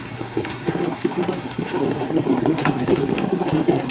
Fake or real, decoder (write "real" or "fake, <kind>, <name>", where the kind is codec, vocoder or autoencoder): fake, codec, SNAC